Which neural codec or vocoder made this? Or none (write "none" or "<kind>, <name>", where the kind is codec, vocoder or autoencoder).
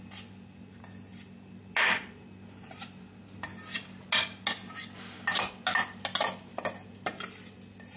none